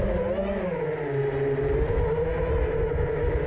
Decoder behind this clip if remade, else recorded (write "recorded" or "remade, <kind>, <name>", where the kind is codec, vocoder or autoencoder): recorded